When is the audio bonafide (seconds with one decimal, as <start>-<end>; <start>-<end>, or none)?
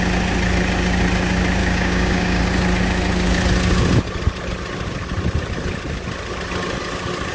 0.0-1.6; 2.4-7.3